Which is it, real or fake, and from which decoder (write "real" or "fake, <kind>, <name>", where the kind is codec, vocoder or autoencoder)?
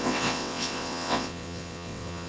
fake, vocoder, WaveNeXt